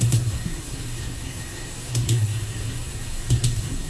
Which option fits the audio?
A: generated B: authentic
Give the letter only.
A